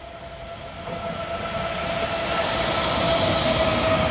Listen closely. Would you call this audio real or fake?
real